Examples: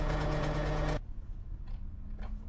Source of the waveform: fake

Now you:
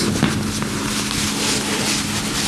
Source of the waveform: real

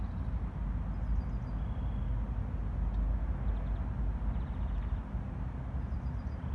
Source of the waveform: real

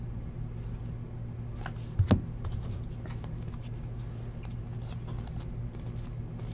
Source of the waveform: real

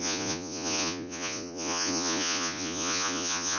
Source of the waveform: fake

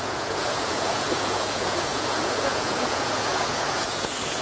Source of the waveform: fake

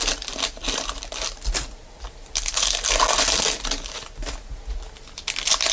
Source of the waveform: real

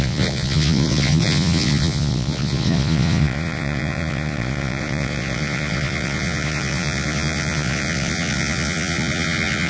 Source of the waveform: fake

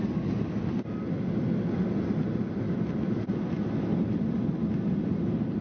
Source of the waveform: real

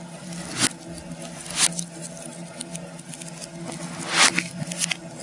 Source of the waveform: real